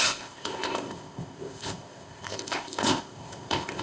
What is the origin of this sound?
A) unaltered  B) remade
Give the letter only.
B